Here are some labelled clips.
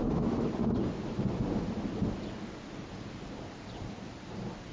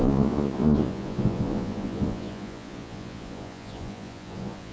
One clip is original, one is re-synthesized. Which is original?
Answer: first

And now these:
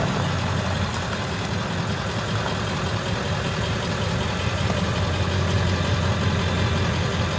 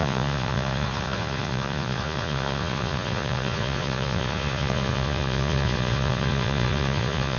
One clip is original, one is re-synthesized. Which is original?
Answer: first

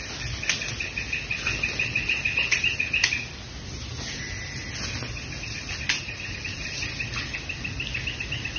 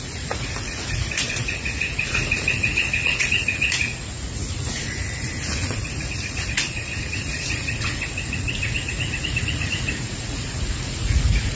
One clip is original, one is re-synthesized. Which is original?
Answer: first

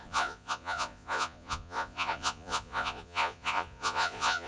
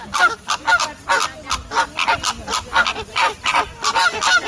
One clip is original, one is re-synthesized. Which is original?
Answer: second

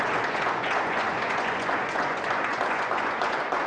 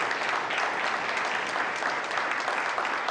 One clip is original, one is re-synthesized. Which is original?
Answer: second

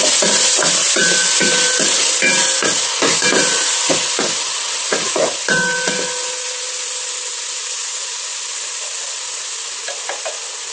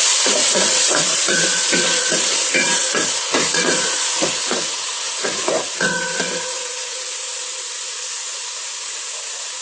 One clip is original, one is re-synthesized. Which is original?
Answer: first